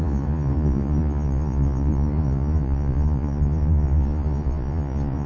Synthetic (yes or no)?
yes